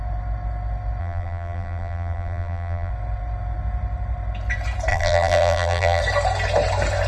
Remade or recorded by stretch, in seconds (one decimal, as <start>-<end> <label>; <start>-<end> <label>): 0.0-1.0 recorded; 1.0-2.9 remade; 2.9-4.9 recorded; 4.9-6.0 remade; 6.0-7.1 recorded